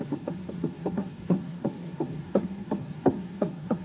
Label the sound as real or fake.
fake